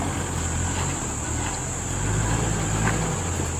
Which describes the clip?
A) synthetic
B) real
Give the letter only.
B